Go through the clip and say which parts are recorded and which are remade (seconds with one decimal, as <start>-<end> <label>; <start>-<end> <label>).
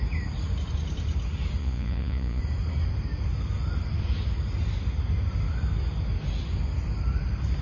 0.0-1.6 recorded; 1.6-2.4 remade; 2.4-7.6 recorded